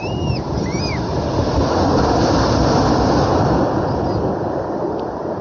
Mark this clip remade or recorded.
recorded